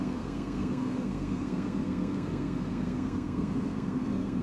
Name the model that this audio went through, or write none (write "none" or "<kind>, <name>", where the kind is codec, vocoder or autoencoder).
codec, SNAC